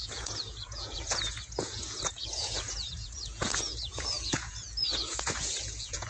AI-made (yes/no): yes